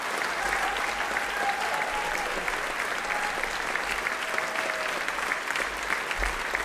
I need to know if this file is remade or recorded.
recorded